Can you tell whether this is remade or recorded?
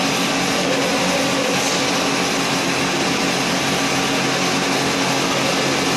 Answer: recorded